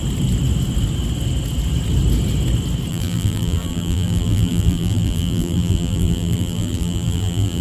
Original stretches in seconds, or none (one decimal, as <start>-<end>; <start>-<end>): 0.0-2.9